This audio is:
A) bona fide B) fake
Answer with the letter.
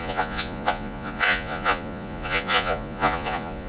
B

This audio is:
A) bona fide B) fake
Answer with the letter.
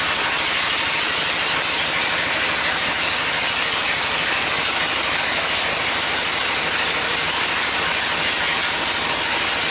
A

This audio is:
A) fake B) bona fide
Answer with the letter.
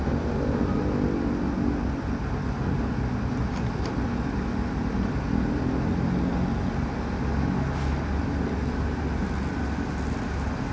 B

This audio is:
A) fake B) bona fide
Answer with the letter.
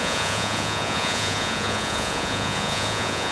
A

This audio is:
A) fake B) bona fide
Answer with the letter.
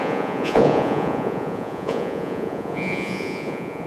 A